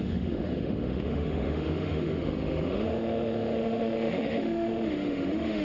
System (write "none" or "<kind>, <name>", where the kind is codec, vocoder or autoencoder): autoencoder, DAC-VAE